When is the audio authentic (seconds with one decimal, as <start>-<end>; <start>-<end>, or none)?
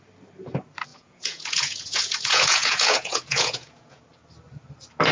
0.0-0.9; 4.0-5.1